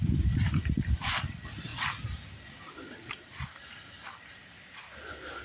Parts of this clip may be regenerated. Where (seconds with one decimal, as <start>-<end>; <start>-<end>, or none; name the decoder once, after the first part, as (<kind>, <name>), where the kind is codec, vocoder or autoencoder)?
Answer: 1.7-4.0 (vocoder, BigVGAN v2)